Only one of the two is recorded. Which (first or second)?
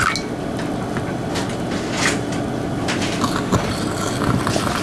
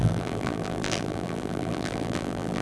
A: first